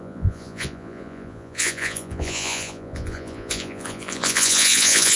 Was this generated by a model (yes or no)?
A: yes